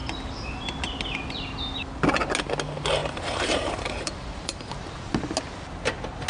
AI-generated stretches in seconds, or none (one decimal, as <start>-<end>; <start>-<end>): 3.0-5.2